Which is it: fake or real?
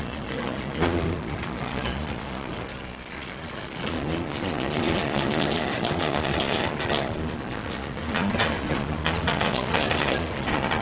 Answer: fake